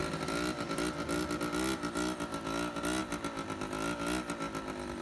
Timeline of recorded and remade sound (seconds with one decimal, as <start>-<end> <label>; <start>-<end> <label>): 0.0-5.0 recorded